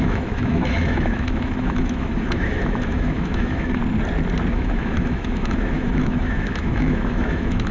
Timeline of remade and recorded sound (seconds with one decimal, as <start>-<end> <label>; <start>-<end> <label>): 0.0-3.8 remade; 3.8-4.5 recorded; 4.5-7.7 remade